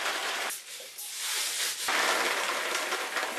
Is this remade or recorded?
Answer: recorded